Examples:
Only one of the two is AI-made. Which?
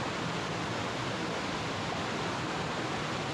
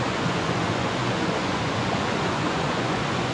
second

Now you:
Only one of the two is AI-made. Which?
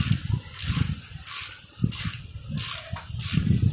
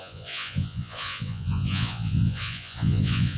second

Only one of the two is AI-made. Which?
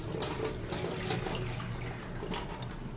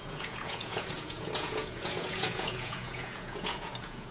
second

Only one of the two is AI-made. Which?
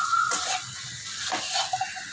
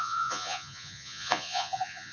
second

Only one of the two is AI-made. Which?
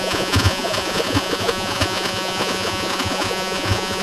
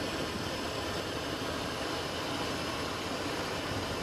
first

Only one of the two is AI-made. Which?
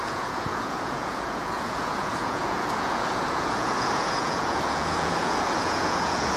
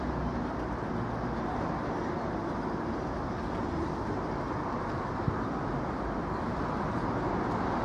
first